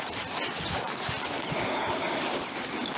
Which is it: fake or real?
real